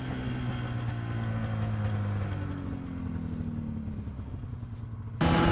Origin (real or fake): real